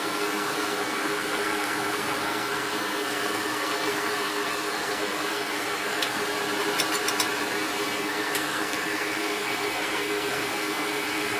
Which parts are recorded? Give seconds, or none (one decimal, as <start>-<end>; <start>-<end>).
6.2-8.0